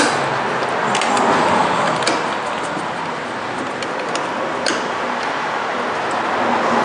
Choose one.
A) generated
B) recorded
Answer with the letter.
B